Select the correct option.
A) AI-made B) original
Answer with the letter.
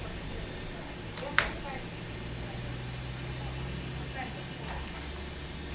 B